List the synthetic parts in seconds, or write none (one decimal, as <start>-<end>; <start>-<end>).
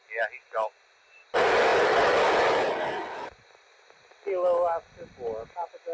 none